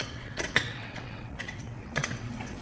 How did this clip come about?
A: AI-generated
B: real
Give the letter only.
A